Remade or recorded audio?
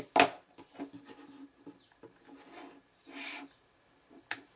recorded